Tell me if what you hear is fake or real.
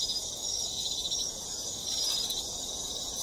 real